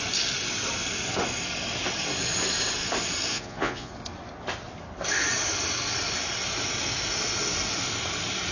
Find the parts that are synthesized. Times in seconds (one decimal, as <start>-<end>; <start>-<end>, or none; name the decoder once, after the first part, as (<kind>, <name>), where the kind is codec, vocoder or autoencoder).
3.3-3.9 (vocoder, Vocos)